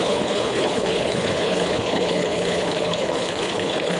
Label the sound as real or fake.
fake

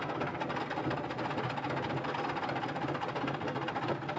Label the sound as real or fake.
real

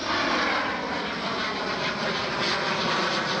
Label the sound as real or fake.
real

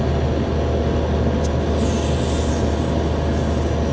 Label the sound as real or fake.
real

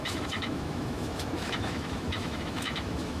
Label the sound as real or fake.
fake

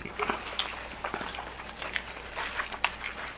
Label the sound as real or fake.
real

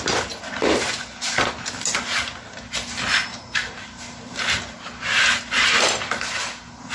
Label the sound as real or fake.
real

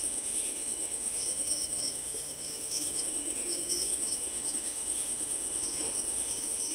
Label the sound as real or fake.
fake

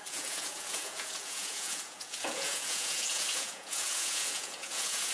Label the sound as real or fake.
fake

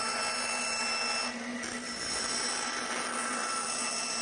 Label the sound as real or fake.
real